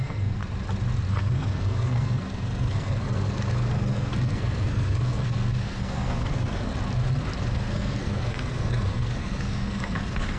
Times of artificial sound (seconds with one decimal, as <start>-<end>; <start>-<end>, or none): 0.0-0.4; 1.1-6.7; 7.4-10.4